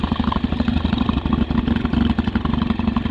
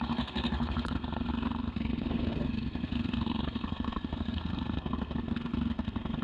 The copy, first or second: second